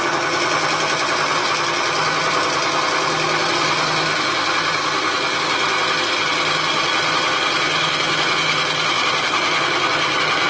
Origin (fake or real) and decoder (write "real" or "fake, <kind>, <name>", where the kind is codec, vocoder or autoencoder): real